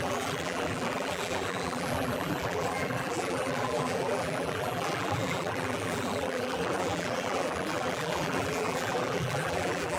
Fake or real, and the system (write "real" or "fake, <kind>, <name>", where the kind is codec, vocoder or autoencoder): fake, vocoder, BigVGAN v2